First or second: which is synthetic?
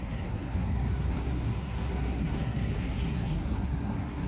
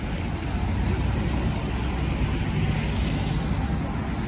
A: first